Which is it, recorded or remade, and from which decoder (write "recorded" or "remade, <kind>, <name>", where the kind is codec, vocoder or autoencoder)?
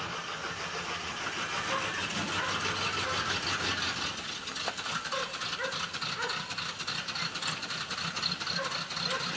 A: recorded